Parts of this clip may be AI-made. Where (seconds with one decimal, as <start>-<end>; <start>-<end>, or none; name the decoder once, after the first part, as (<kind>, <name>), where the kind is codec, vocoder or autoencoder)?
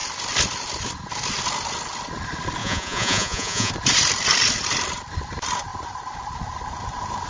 2.6-3.7 (vocoder, Vocos)